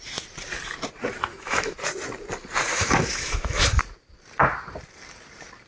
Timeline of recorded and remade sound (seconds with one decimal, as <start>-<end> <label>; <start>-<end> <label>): 0.0-1.3 recorded; 1.3-1.8 remade; 1.8-2.7 recorded; 2.7-3.8 remade; 3.8-5.7 recorded